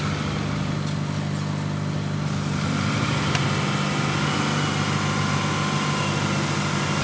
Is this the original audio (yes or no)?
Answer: yes